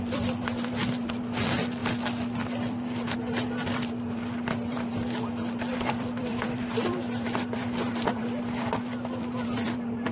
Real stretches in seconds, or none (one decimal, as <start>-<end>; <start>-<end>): 1.8-2.4

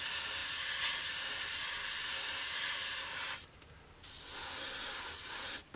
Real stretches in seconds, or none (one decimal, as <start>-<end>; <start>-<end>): 0.0-5.8

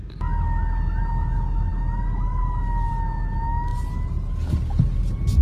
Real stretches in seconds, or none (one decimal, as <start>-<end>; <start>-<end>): 0.0-5.4

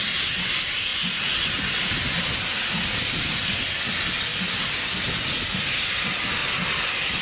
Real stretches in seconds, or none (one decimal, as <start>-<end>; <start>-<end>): 0.9-3.0; 4.3-5.7; 6.4-7.2

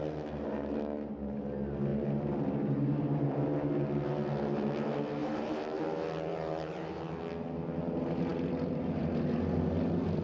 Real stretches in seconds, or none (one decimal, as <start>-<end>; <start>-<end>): 0.0-1.9; 3.7-5.2; 5.8-6.3; 7.1-10.2

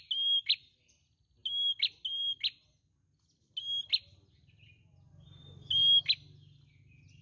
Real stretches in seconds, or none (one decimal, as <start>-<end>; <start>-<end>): 0.0-7.2

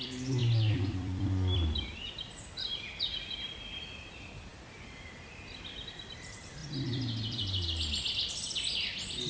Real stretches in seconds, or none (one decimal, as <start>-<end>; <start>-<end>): none